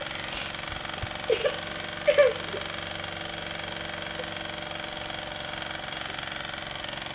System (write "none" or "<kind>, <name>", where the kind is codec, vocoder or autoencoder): none